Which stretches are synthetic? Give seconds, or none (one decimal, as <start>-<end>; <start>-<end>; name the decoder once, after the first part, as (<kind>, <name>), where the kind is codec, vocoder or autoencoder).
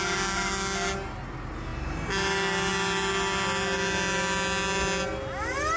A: none